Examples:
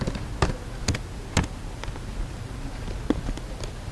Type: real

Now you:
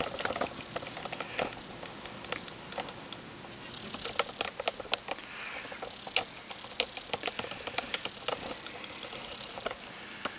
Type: real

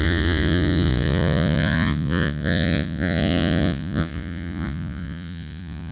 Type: fake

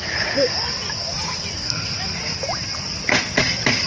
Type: real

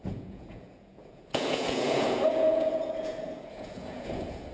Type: fake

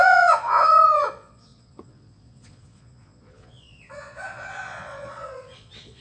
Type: fake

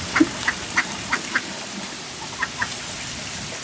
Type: real